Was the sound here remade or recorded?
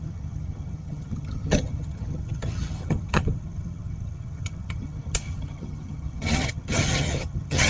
remade